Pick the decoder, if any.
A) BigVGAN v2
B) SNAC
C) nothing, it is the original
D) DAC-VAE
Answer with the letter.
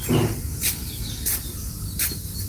C